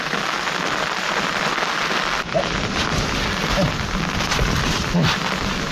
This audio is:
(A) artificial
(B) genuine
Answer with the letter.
B